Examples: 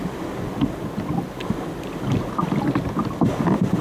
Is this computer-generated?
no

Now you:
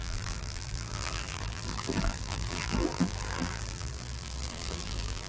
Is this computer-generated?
yes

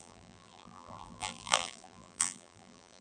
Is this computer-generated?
yes